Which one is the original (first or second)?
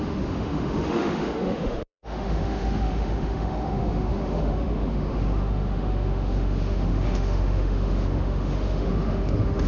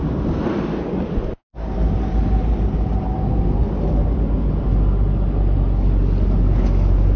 second